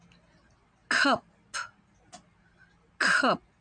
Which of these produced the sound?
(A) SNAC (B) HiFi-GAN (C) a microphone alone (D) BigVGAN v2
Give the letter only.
C